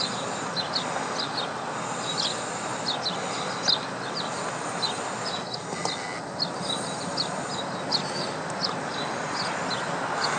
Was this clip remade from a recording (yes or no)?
no